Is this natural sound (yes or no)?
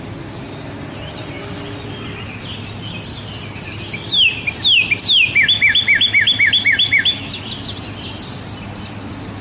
yes